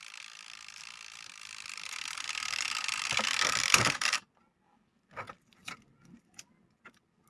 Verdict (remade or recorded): recorded